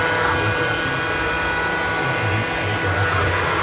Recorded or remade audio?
recorded